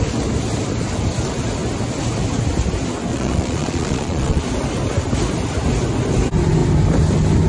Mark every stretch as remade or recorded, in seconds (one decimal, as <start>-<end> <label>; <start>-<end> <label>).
0.0-3.1 recorded; 3.1-4.4 remade; 4.4-7.5 recorded